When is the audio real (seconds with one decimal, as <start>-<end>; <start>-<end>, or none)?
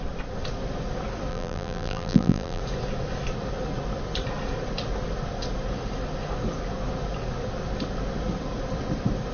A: 0.0-1.3; 2.6-9.3